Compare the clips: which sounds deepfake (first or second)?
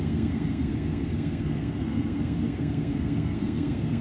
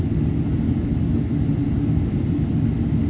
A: first